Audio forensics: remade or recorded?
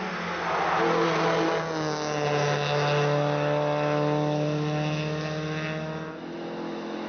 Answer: recorded